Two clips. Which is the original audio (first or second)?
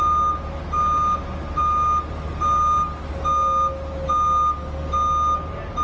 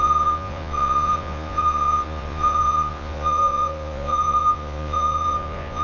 first